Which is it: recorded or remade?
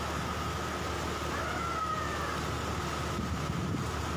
recorded